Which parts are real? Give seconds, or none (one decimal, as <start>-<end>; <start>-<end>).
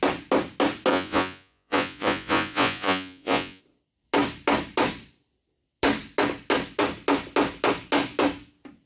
0.0-0.9; 3.6-8.9